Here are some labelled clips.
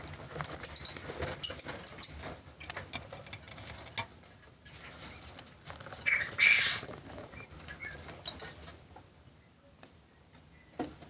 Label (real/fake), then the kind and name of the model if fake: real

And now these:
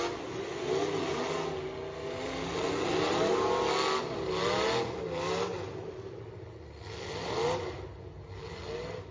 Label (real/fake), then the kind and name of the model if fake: real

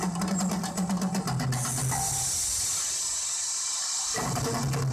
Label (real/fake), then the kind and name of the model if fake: real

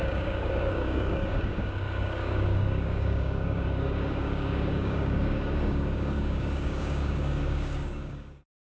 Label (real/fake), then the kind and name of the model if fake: fake, codec, DAC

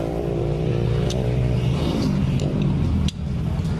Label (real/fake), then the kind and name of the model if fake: real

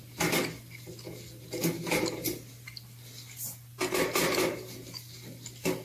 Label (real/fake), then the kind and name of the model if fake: real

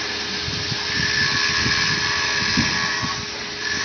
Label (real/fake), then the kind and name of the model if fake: real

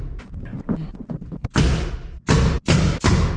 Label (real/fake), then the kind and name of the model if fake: real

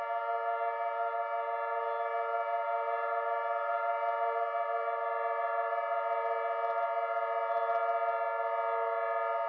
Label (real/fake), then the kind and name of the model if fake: real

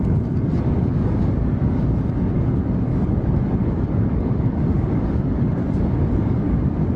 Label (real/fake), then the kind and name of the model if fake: fake, codec, DAC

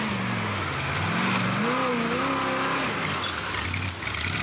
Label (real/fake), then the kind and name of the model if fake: real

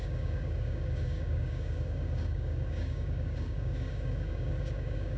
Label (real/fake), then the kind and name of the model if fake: fake, codec, DAC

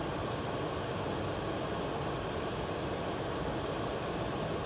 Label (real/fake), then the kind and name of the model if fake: real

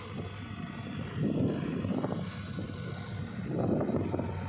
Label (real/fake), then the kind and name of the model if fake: real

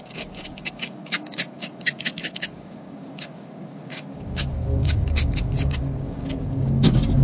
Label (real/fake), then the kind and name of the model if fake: fake, codec, DAC